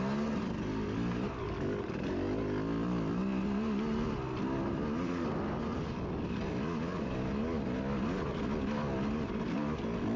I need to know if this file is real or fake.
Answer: real